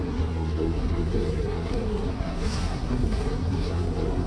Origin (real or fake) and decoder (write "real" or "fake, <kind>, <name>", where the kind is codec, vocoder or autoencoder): fake, codec, SNAC